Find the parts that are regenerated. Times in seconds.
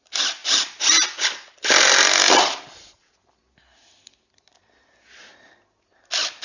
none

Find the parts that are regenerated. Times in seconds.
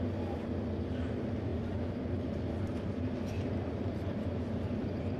1.5-4.5 (vocoder, BigVGAN v2)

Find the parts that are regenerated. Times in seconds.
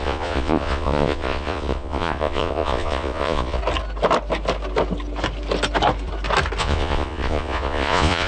0.0-3.6 (vocoder, Vocos); 6.6-8.3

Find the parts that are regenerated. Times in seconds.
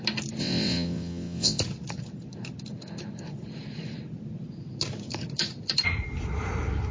0.4-1.6 (vocoder, WaveNeXt)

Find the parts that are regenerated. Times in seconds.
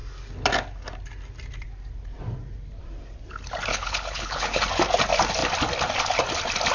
3.7-4.6 (codec, HILCodec)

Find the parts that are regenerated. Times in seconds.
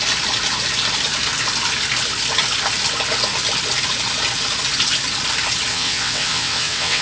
5.7-7.0 (vocoder, WaveNeXt)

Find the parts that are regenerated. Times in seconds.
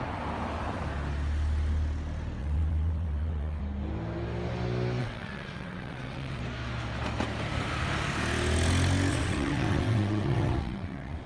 2.4-3.6 (vocoder, WaveNeXt); 5.0-6.4; 9.1-11.3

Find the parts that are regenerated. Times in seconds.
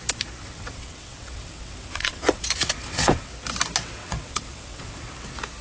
0.4-2.4 (vocoder, WaveNeXt); 2.8-3.3; 4.0-5.1